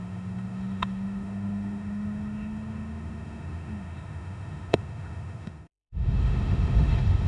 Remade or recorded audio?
remade